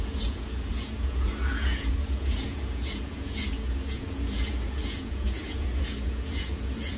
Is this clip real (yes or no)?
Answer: no